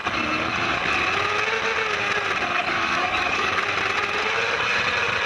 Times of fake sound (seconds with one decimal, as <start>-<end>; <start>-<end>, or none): 2.6-3.6